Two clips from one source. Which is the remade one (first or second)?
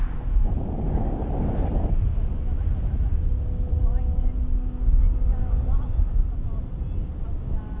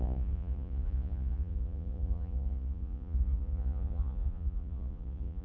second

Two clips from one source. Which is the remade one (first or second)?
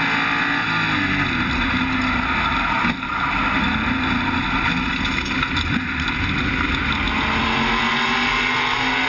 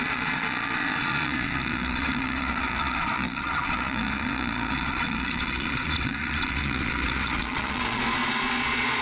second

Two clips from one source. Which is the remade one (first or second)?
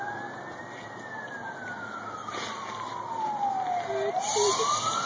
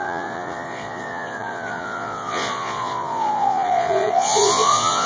second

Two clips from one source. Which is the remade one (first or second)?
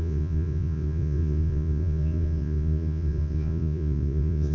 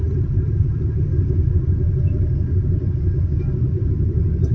first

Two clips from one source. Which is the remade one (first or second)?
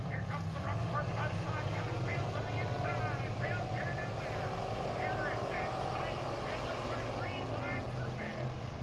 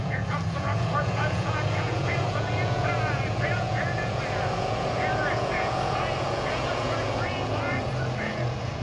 second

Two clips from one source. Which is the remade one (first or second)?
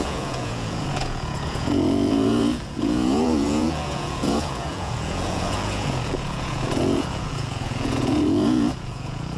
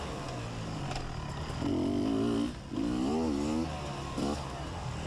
first